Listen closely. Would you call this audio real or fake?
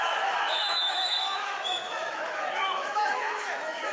fake